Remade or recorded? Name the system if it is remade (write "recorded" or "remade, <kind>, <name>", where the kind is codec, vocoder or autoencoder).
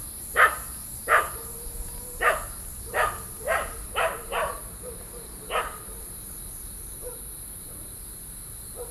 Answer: remade, vocoder, BigVGAN v2